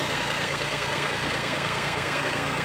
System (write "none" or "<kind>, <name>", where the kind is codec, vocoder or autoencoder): codec, SNAC